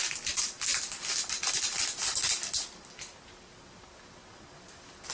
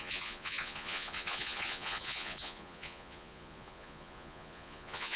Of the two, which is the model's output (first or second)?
second